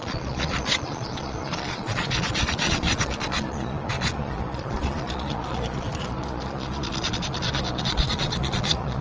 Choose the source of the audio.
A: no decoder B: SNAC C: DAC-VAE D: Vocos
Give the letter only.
D